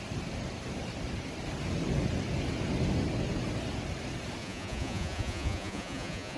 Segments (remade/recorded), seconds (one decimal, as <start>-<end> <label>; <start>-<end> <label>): 0.0-4.4 recorded; 4.4-6.4 remade

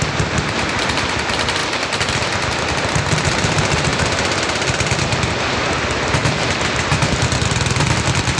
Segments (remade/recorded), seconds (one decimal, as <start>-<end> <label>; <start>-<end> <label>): 0.0-8.4 recorded

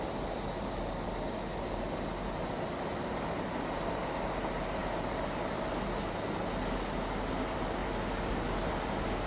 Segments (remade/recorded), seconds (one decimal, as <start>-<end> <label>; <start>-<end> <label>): 0.0-9.3 recorded

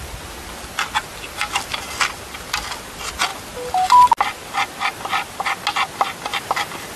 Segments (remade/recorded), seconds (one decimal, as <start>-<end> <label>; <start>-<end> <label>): 0.0-3.3 recorded; 3.3-4.8 remade; 4.8-6.3 recorded; 6.3-7.0 remade